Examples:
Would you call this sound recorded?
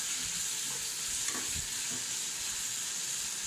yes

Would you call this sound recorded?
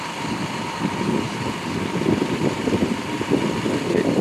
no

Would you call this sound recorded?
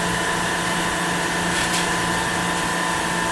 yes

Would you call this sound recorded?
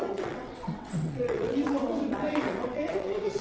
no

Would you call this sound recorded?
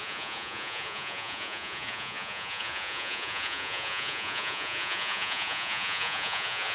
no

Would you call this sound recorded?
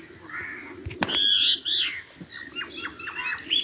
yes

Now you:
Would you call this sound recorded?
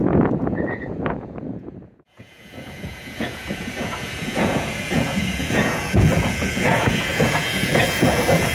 no